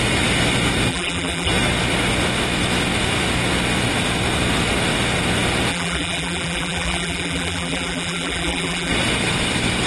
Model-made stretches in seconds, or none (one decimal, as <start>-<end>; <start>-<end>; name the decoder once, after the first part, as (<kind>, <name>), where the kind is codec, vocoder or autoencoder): 0.9-1.5 (vocoder, BigVGAN v2); 5.7-8.9